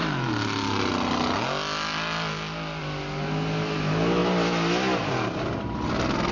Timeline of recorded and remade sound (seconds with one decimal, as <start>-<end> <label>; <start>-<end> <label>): 0.0-6.3 recorded